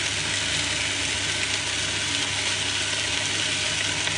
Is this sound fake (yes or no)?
no